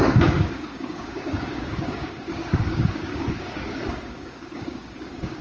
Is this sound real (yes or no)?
no